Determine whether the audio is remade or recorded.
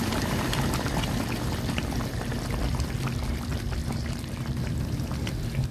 remade